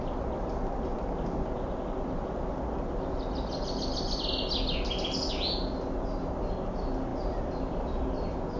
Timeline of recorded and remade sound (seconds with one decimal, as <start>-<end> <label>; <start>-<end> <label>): 0.0-7.1 recorded; 7.1-8.0 remade; 8.0-8.6 recorded